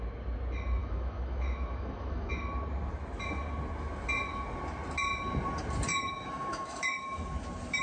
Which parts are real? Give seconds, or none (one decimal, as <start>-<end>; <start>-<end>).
0.0-0.8; 2.3-5.9; 7.2-7.8